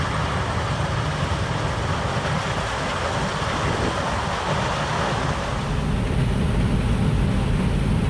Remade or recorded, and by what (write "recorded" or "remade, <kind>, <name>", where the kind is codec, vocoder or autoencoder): recorded